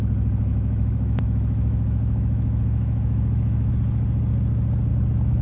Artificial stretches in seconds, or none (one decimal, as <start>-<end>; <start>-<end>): 0.5-3.7